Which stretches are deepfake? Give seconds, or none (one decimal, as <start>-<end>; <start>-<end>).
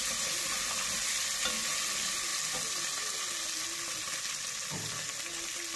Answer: none